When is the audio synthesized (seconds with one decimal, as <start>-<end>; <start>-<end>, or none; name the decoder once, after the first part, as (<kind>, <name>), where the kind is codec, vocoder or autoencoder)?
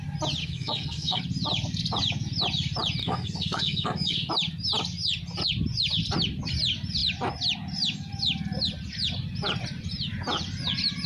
0.4-1.2 (codec, SNAC); 3.0-4.3